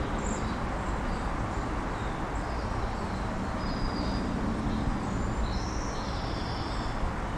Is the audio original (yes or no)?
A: yes